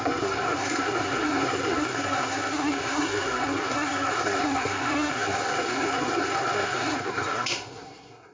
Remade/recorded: remade